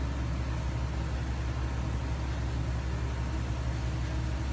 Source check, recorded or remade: recorded